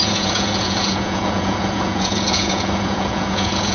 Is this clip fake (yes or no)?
yes